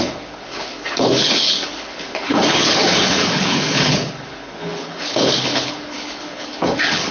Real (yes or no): no